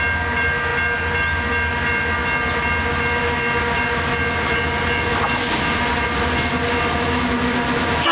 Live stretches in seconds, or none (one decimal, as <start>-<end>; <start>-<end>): 0.0-8.1